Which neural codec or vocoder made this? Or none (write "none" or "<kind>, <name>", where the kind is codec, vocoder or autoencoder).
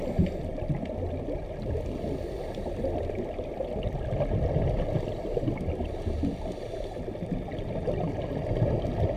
none